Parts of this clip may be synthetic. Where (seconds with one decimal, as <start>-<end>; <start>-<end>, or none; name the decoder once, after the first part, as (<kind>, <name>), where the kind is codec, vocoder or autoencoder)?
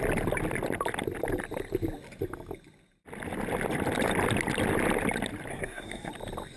5.5-6.1 (codec, SNAC)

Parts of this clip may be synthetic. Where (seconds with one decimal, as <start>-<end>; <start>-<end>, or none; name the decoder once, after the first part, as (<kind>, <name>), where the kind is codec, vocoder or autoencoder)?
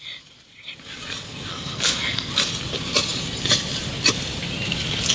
1.5-2.3 (codec, SNAC)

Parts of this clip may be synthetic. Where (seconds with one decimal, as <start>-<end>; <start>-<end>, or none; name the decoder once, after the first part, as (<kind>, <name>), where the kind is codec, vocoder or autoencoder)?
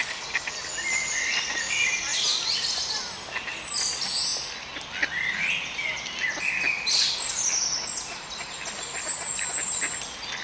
none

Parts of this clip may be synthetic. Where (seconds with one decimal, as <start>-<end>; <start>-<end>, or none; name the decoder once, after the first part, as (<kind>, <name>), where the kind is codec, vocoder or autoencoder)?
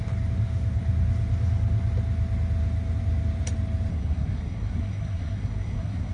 3.9-6.1 (codec, SNAC)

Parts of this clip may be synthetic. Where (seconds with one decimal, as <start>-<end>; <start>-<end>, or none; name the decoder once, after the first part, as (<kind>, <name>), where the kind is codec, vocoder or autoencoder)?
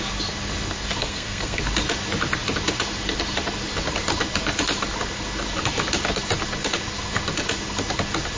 1.0-1.6 (codec, SNAC)